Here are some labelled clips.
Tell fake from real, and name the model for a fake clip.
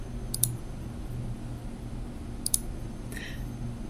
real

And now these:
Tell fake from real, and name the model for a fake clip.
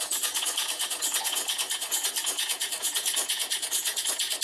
fake, vocoder, Vocos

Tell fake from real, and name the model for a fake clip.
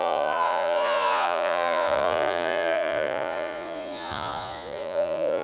fake, vocoder, Vocos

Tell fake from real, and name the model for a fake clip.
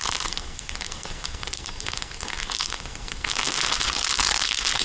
fake, codec, SNAC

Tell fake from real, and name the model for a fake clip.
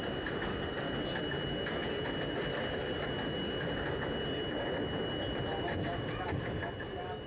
real